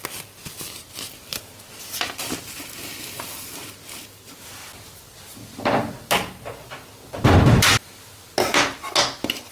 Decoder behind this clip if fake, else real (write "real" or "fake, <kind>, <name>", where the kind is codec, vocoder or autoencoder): real